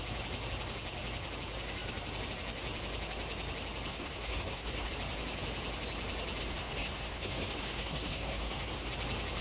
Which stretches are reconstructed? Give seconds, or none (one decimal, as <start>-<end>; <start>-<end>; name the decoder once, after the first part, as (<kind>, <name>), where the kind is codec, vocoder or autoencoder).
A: 3.9-4.9 (codec, SNAC); 6.4-8.9